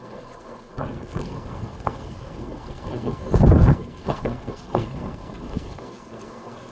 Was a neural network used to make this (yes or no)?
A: yes